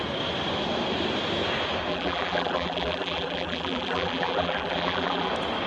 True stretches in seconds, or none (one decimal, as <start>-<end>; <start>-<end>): 0.0-1.9; 5.3-5.7

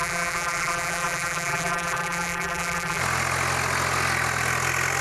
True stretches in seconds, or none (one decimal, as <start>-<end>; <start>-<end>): 3.0-5.0